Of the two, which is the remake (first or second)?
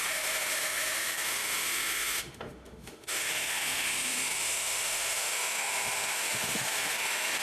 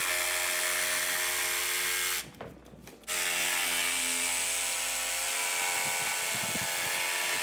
first